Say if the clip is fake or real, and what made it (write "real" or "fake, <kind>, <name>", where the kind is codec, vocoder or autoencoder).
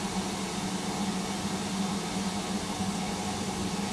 real